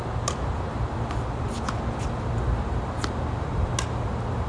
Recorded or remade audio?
recorded